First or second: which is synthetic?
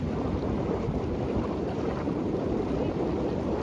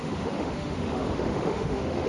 second